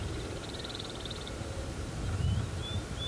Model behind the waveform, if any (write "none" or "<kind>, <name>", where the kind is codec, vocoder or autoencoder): vocoder, BigVGAN v2